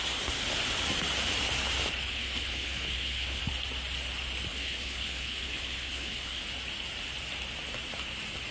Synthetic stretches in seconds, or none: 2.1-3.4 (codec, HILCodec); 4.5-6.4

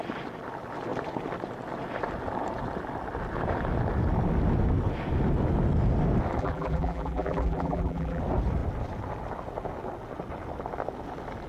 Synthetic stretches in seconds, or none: 6.4-8.2 (vocoder, BigVGAN v2)

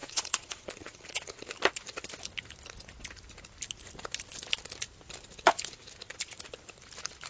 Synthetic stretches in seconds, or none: 0.0-1.4 (vocoder, Vocos)

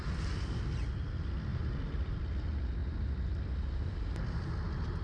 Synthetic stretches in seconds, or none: 1.5-2.2 (vocoder, BigVGAN v2); 2.8-4.1